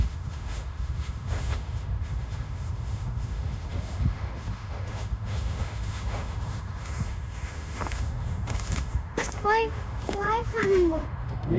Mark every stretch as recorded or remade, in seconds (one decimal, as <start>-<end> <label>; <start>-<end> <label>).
0.0-11.6 remade